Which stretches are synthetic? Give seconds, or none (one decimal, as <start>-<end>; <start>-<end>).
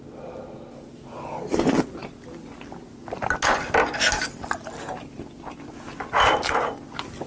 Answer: none